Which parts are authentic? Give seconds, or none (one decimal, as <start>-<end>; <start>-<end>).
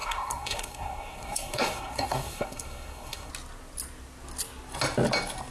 3.3-5.5